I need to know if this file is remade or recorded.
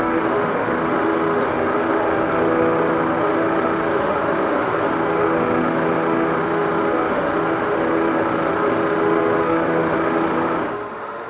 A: remade